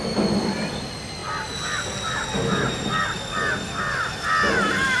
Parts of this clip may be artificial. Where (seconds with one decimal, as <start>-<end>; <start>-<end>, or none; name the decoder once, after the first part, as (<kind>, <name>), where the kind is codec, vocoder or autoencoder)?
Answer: none